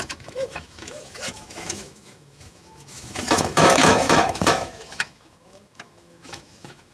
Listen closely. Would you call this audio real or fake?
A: fake